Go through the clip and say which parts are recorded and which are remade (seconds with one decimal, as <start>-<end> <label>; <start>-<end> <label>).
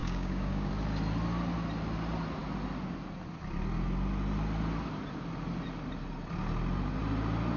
0.0-0.7 remade; 0.7-7.6 recorded